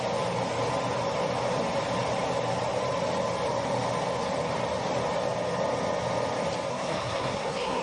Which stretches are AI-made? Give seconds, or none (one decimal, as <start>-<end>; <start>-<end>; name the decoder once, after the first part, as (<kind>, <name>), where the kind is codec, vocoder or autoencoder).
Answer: 6.7-7.8 (codec, SNAC)